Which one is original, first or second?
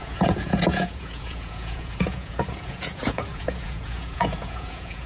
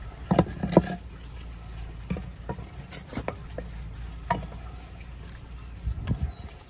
second